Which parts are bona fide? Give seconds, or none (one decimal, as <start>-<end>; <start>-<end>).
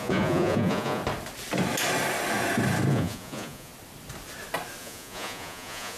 1.0-2.9; 3.7-4.8